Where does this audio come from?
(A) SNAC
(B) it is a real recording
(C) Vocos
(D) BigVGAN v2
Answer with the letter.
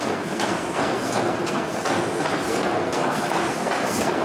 A